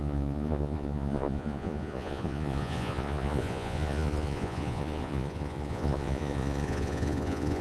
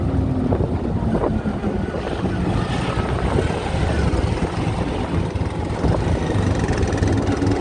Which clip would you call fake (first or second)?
first